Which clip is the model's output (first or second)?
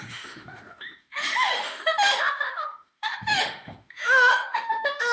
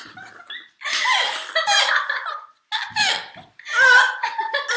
first